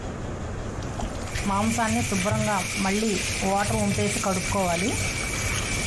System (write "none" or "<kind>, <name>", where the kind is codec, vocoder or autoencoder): none